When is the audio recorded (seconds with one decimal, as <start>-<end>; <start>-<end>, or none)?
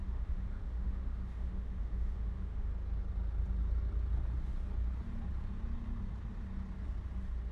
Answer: 2.7-7.5